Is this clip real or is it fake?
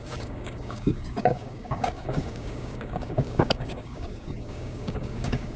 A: fake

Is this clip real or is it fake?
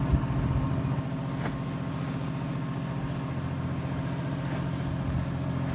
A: real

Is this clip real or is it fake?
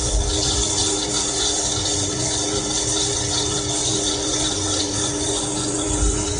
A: fake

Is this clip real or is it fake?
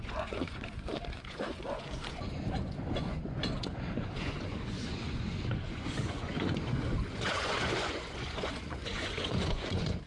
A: fake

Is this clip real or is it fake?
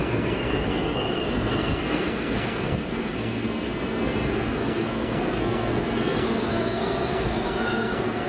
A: fake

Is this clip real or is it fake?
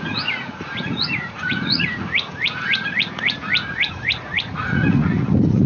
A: fake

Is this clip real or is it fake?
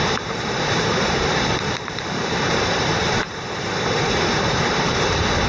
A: fake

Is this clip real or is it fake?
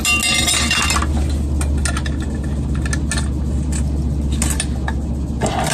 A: real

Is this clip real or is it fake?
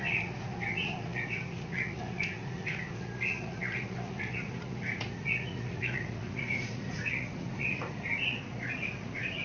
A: fake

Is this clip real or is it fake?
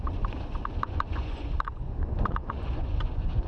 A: fake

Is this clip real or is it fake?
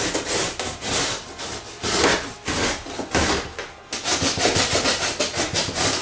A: real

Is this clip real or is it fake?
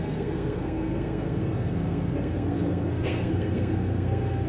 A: fake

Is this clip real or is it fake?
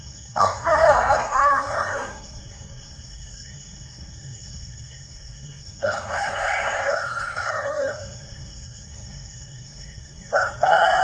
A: fake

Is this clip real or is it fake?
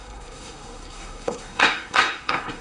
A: fake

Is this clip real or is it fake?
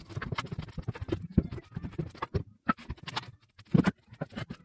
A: real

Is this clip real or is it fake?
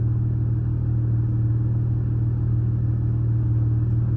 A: real